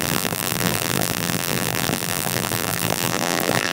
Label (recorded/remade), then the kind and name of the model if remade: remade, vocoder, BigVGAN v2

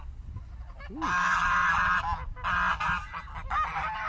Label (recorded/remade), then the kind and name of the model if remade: recorded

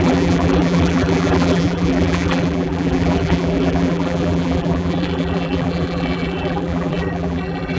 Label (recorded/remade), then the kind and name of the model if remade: remade, vocoder, BigVGAN v2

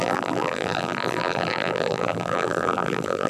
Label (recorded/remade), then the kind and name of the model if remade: remade, vocoder, BigVGAN v2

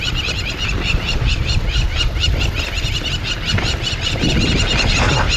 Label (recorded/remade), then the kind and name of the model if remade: recorded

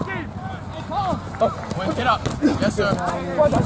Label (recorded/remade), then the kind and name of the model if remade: recorded